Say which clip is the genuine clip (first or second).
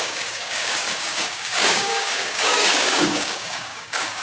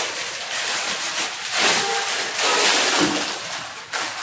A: second